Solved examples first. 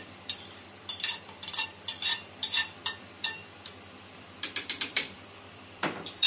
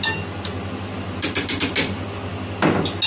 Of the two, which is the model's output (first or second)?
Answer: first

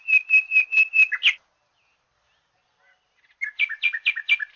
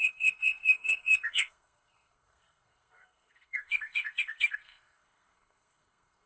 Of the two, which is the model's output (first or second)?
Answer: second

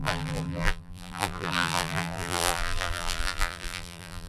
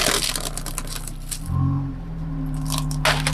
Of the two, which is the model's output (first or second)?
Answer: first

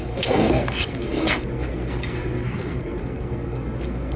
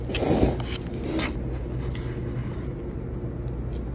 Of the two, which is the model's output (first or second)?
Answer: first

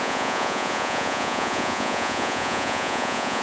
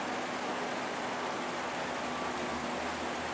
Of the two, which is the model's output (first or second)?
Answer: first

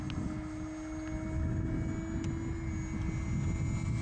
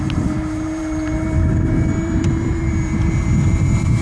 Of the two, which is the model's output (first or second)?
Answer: second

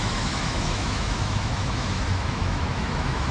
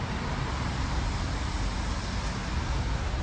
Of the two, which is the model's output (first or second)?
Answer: first